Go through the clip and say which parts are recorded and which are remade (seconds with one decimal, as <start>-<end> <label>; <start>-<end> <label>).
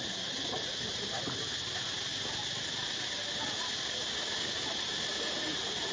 0.0-5.9 recorded